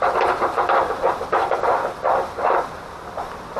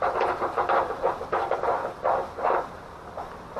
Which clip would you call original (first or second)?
second